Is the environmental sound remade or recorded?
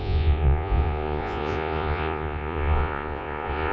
remade